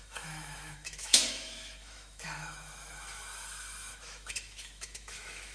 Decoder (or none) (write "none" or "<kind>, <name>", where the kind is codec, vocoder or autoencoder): autoencoder, DAC-VAE